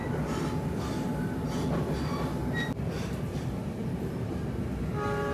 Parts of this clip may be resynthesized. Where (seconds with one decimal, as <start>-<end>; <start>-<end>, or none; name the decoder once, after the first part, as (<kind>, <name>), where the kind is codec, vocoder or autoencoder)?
0.0-0.8 (vocoder, BigVGAN v2); 2.4-4.0